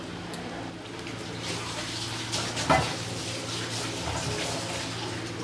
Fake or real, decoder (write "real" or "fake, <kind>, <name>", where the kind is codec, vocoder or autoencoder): real